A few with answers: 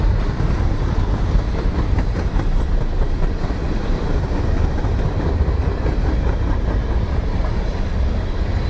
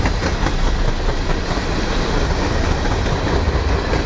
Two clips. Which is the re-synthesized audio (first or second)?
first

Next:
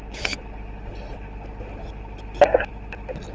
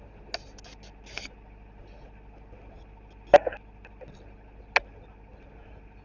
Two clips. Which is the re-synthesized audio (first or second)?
first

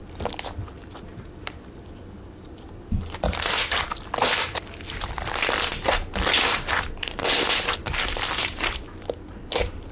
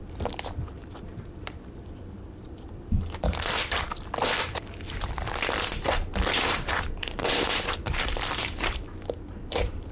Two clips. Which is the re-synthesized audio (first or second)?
second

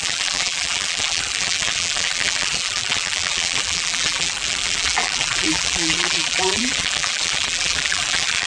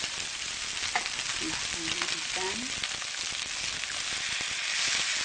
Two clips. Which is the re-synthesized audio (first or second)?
first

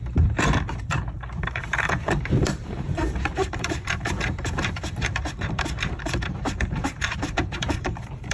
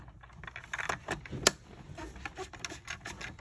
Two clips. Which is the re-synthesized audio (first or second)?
first